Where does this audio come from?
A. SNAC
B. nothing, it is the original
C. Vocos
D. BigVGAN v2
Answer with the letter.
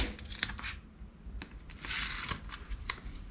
B